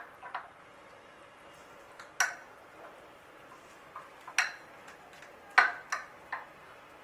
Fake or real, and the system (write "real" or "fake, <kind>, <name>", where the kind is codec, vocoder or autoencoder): real